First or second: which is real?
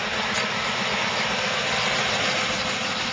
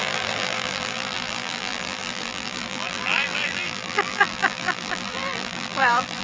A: first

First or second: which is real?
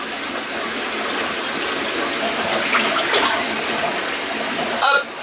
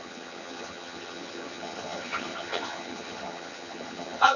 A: first